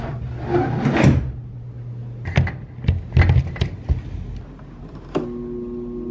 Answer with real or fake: real